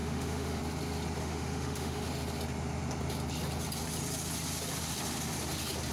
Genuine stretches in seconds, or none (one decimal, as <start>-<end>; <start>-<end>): 0.6-1.2; 2.1-5.9